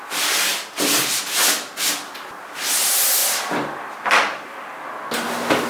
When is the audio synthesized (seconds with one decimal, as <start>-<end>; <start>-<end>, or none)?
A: 0.5-1.2; 3.2-4.6